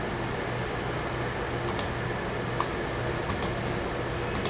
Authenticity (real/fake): real